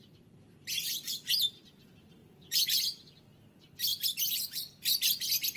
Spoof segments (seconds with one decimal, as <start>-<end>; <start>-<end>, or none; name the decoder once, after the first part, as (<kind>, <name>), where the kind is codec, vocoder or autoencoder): 2.2-2.8 (vocoder, Vocos)